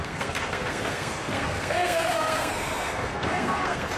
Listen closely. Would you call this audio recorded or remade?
remade